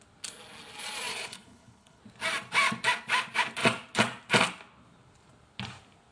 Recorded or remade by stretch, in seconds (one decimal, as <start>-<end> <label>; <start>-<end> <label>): 0.0-1.1 recorded; 1.1-2.0 remade; 2.0-6.1 recorded